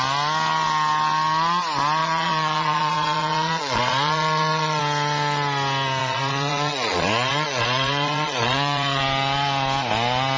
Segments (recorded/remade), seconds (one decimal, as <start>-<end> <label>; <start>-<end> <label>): 0.0-2.0 recorded; 2.0-4.8 remade; 4.8-6.0 recorded; 6.0-9.0 remade; 9.0-10.4 recorded